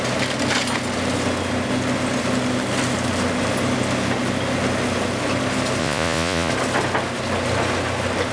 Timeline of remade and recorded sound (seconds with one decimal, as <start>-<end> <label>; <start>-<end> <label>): 0.0-5.8 recorded; 5.8-6.5 remade; 6.5-8.3 recorded